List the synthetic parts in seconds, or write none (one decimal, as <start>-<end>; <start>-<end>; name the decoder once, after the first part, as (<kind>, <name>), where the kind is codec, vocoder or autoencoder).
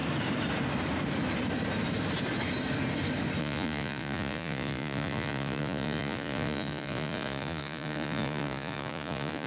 3.4-9.5 (vocoder, Vocos)